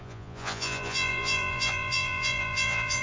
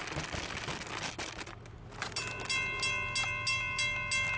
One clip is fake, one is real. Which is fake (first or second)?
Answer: first